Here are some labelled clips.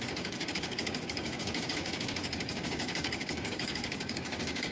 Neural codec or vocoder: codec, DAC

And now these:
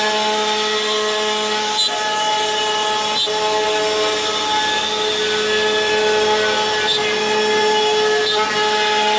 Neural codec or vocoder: none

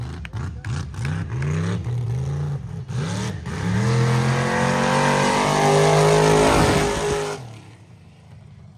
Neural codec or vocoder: none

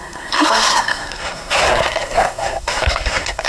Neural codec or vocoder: codec, SNAC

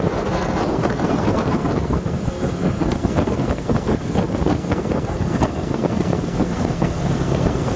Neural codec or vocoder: codec, SNAC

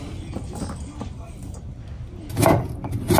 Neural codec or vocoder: none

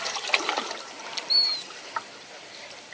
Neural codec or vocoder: vocoder, BigVGAN v2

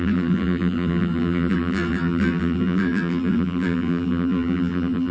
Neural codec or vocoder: vocoder, BigVGAN v2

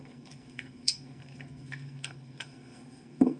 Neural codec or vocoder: codec, SNAC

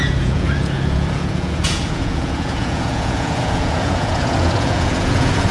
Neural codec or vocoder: vocoder, Vocos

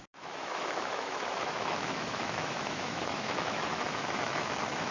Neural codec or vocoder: autoencoder, DAC-VAE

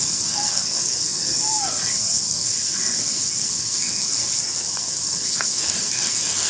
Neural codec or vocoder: codec, SNAC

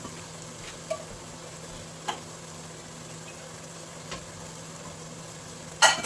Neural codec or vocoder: none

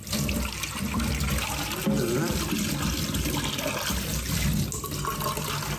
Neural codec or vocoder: none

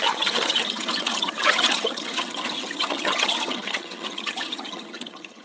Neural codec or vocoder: vocoder, HiFi-GAN